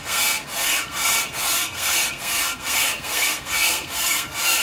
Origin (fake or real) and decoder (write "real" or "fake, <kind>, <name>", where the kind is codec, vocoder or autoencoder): fake, codec, SNAC